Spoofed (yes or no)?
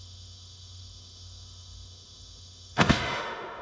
yes